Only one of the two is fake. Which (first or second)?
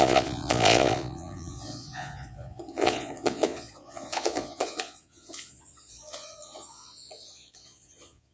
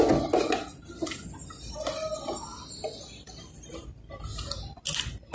first